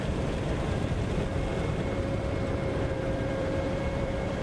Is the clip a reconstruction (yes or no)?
yes